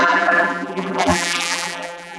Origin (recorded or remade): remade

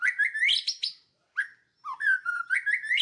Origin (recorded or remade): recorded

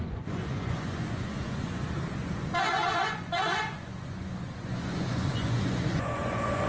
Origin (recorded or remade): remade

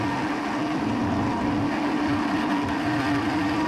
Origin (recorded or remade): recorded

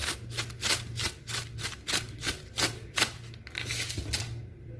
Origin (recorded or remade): recorded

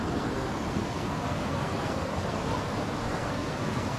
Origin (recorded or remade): remade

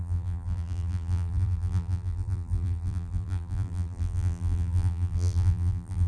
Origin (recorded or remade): remade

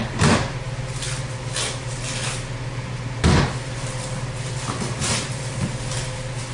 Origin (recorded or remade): recorded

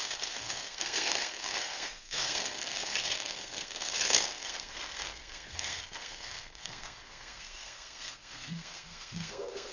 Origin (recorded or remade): remade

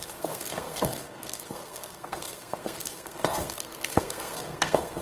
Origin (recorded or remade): remade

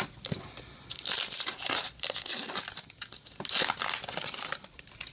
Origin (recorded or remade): recorded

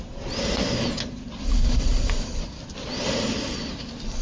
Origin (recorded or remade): recorded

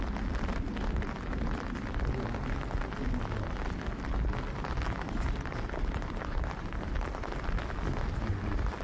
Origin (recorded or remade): recorded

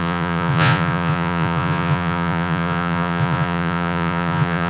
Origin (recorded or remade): remade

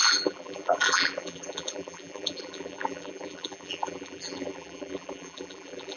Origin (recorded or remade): remade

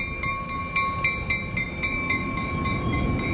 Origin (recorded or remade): recorded